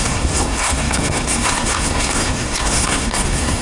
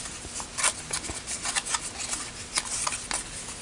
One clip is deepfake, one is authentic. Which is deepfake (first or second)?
first